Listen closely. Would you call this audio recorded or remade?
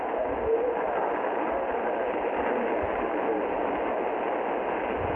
recorded